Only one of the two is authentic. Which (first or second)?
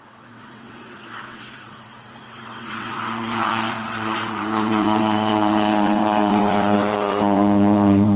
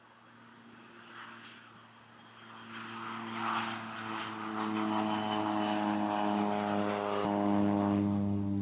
second